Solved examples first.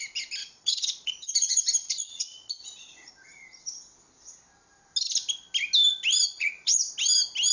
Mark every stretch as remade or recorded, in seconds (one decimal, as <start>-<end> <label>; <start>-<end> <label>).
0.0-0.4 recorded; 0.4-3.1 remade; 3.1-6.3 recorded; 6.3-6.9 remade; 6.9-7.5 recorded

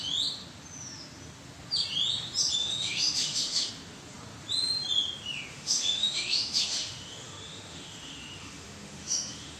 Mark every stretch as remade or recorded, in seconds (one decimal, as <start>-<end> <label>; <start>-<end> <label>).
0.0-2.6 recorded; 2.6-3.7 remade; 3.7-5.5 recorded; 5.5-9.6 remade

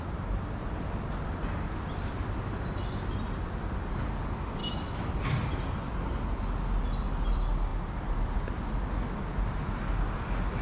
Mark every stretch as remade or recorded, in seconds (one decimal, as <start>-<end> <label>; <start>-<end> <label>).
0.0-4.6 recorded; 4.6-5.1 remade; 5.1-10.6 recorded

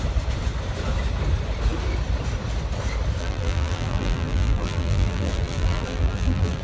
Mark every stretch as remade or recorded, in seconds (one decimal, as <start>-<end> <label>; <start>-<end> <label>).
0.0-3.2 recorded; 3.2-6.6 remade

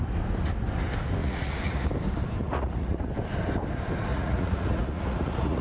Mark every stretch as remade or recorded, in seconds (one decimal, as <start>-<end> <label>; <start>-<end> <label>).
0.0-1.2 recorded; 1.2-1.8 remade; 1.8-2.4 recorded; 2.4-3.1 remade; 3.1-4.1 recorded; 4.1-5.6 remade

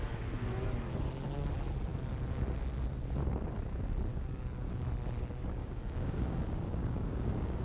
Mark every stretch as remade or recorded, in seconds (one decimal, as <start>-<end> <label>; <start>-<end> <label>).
0.0-4.1 recorded; 4.1-4.8 remade; 4.8-5.6 recorded; 5.6-7.6 remade

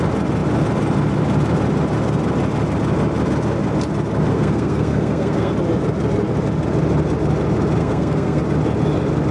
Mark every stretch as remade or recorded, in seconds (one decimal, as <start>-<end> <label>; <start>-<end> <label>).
0.0-4.3 recorded; 4.3-5.5 remade; 5.5-7.8 recorded; 7.8-8.4 remade; 8.4-9.3 recorded